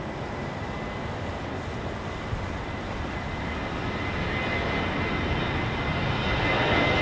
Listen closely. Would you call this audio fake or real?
real